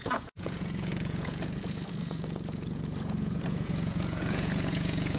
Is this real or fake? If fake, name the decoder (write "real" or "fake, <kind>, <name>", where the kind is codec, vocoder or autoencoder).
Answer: fake, vocoder, Vocos